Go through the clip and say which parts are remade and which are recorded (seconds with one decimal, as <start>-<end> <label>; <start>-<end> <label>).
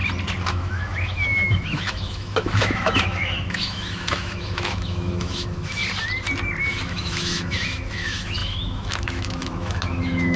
0.0-0.5 recorded; 0.5-5.8 remade; 5.8-6.6 recorded; 6.6-10.4 remade